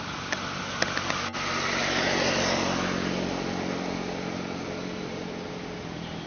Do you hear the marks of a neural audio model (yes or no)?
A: no